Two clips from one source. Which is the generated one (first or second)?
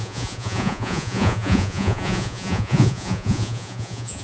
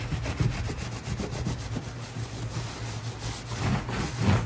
first